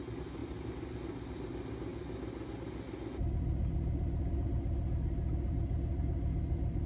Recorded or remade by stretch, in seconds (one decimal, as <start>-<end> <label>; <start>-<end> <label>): 0.0-6.9 recorded